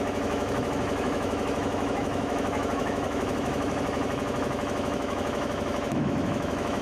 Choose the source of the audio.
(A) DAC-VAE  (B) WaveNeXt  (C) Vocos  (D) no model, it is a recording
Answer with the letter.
A